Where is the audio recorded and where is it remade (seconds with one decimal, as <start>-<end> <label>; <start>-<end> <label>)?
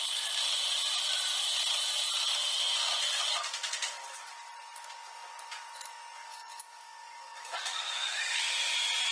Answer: 0.0-3.3 recorded; 3.3-4.3 remade; 4.3-6.2 recorded; 6.2-8.7 remade; 8.7-9.1 recorded